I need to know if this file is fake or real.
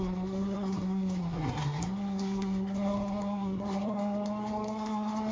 fake